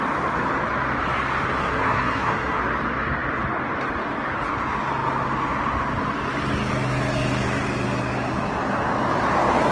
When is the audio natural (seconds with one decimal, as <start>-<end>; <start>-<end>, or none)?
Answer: 0.0-1.6; 2.6-9.7